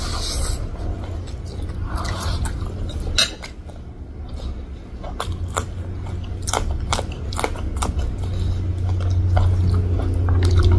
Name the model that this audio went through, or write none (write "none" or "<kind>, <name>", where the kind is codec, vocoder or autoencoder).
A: none